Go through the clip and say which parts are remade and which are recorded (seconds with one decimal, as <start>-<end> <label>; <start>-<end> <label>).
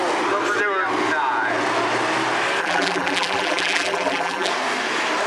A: 0.0-2.6 recorded; 2.6-4.5 remade; 4.5-5.3 recorded